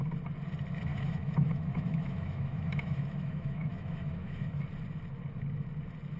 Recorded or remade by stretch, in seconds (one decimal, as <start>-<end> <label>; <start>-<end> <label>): 0.0-0.9 recorded; 0.9-4.6 remade; 4.6-6.2 recorded